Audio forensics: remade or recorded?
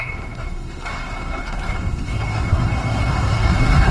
remade